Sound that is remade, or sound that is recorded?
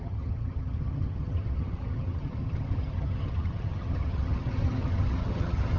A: remade